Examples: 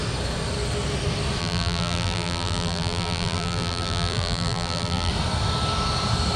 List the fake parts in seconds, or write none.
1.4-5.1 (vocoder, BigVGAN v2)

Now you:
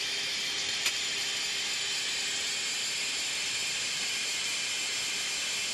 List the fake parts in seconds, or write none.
3.6-5.3 (vocoder, BigVGAN v2)

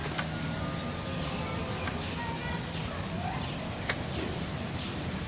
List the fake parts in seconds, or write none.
none

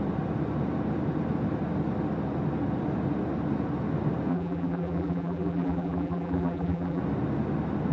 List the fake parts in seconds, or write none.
4.3-7.0 (vocoder, BigVGAN v2)

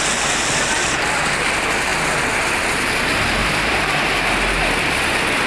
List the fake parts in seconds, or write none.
3.4-4.6 (vocoder, BigVGAN v2)